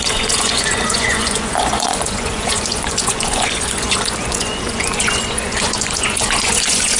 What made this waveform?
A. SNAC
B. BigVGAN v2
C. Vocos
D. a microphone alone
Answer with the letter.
C